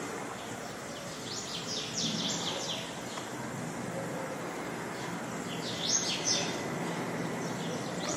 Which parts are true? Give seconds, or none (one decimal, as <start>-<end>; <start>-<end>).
3.3-7.5